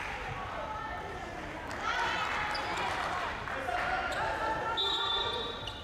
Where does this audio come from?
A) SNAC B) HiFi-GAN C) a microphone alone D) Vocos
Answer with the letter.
C